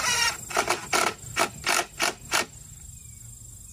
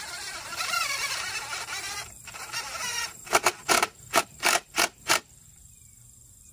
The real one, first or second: first